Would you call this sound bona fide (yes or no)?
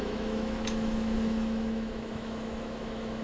no